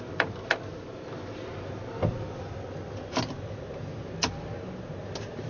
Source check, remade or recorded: recorded